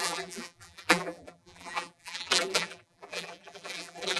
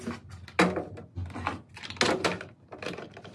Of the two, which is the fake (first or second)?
first